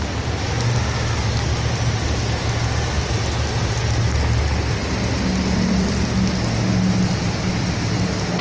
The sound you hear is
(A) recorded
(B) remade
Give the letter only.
A